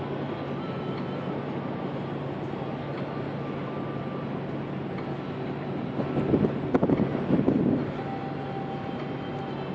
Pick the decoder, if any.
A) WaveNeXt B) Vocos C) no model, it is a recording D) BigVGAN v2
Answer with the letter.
C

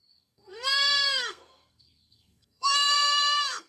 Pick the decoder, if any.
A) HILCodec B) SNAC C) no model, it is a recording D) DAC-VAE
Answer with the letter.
B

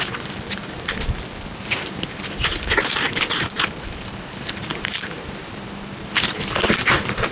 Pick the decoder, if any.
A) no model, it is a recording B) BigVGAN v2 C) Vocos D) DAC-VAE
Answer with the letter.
B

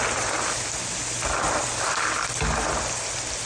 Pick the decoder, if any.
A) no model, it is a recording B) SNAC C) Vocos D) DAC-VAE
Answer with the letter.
A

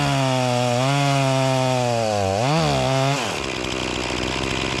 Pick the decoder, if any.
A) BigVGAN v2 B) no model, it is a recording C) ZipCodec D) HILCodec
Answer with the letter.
B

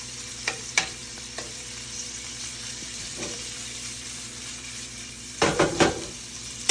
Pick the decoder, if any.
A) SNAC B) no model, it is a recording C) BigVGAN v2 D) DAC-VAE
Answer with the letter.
C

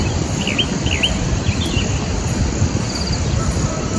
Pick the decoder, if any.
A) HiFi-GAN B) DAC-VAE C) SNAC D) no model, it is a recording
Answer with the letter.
D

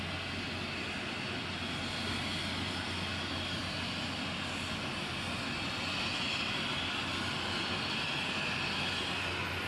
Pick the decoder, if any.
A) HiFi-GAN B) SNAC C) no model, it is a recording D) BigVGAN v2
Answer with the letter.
C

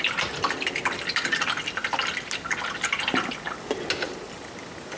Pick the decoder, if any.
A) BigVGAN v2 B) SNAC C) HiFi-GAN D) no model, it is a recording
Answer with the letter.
D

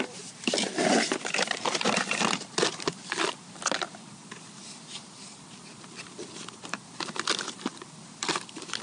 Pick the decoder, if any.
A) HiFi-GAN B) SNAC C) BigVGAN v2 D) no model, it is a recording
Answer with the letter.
C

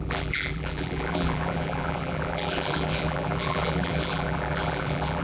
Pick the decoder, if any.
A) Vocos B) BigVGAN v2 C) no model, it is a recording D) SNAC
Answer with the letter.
B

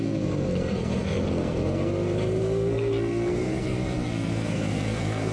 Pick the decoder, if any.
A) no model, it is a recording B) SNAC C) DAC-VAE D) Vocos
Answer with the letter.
B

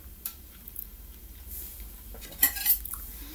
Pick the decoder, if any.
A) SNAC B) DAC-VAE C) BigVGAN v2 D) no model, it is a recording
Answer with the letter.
C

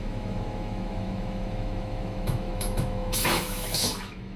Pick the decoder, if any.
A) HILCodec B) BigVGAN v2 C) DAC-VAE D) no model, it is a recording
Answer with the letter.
C